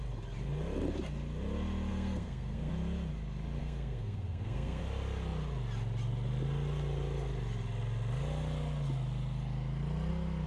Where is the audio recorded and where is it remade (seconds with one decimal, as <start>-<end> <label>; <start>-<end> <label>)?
0.0-1.9 recorded; 1.9-2.7 remade; 2.7-3.6 recorded; 3.6-4.8 remade; 4.8-10.5 recorded